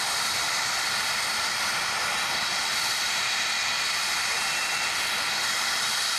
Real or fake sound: fake